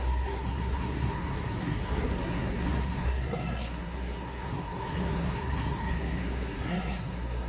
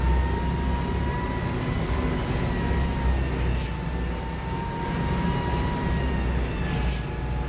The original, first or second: second